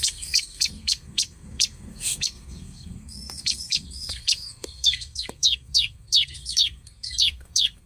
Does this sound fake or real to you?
fake